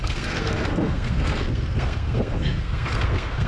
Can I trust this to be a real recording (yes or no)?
no